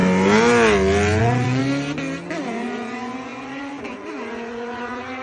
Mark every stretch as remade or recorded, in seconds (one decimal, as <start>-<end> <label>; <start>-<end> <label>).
0.0-1.2 recorded; 1.2-1.6 remade; 1.6-2.3 recorded; 2.3-5.2 remade

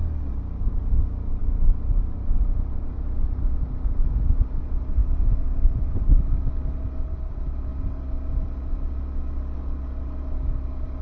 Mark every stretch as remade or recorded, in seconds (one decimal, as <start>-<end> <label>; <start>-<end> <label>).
0.0-11.0 recorded